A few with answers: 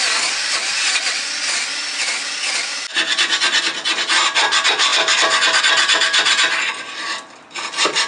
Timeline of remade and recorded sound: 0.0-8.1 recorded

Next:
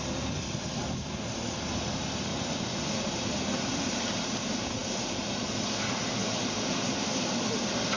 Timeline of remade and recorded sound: 0.0-2.3 recorded; 2.3-2.9 remade; 2.9-8.0 recorded

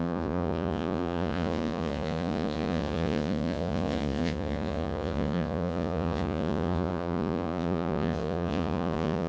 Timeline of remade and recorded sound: 0.0-9.3 remade

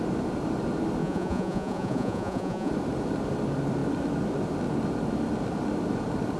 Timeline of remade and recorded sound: 0.0-1.0 recorded; 1.0-2.7 remade; 2.7-6.4 recorded

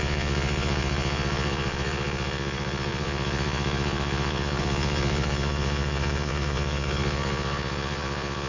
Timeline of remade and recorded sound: 0.0-8.5 remade

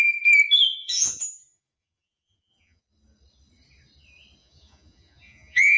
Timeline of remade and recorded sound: 0.0-0.8 recorded; 0.8-2.8 remade; 2.8-4.4 recorded; 4.4-5.8 remade

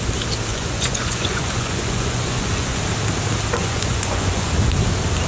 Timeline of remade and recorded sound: 0.0-0.5 recorded; 0.5-2.8 remade; 2.8-3.6 recorded; 3.6-4.5 remade; 4.5-5.3 recorded

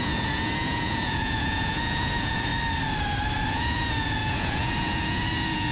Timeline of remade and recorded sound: 0.0-2.5 remade; 2.5-3.5 recorded; 3.5-5.7 remade